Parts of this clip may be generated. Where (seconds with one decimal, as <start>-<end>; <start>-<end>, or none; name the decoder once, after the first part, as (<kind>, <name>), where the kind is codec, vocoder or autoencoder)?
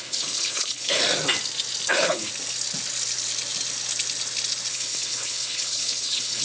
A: 0.0-1.0 (codec, HILCodec); 1.9-2.3; 4.7-6.4